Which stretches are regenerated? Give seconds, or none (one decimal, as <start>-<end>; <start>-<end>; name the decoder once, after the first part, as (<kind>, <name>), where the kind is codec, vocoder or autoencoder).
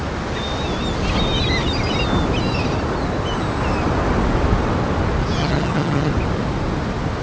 5.4-6.1 (vocoder, HiFi-GAN)